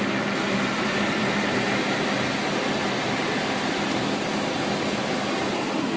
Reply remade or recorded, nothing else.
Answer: recorded